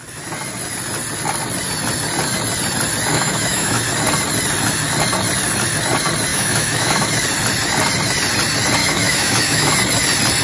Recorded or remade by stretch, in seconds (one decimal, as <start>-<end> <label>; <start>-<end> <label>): 0.0-3.1 recorded; 3.1-3.8 remade; 3.8-6.3 recorded; 6.3-7.1 remade; 7.1-8.8 recorded; 8.8-9.7 remade; 9.7-10.4 recorded